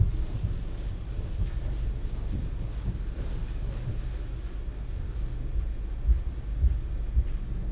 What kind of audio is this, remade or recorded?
recorded